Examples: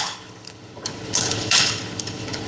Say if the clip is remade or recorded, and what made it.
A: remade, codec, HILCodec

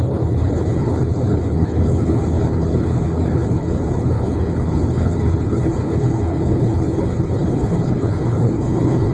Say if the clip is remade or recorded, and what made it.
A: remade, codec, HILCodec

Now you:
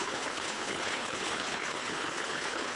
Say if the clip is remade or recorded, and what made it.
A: remade, codec, HILCodec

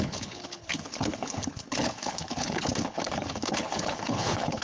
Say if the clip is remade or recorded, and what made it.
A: remade, codec, HILCodec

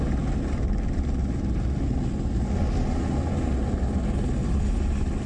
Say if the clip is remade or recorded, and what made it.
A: recorded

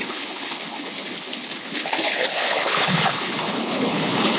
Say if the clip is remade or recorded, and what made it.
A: remade, codec, HILCodec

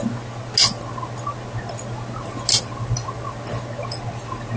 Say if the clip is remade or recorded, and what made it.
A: recorded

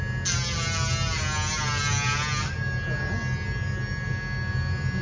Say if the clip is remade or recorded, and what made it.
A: recorded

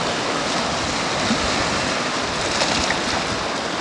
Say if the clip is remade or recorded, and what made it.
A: recorded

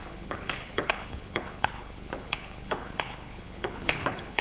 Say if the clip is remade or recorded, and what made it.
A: remade, codec, HILCodec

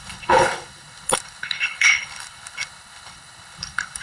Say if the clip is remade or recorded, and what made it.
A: remade, codec, HILCodec